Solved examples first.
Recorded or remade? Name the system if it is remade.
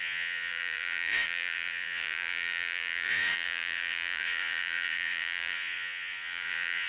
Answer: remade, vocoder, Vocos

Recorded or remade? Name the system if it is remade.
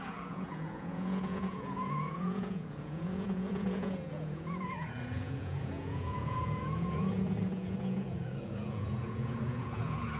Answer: remade, vocoder, Vocos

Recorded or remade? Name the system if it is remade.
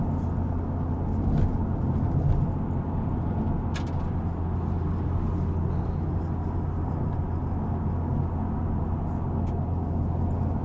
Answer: recorded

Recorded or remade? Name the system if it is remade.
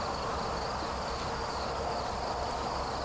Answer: recorded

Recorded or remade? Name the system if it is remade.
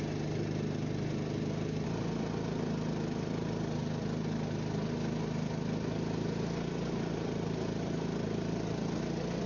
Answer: recorded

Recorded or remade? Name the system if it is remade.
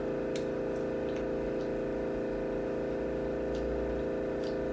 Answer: recorded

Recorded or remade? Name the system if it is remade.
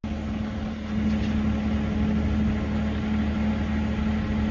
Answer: recorded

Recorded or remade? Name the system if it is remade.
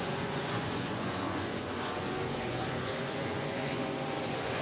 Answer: remade, vocoder, Vocos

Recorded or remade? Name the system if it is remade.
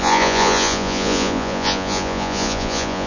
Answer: remade, vocoder, Vocos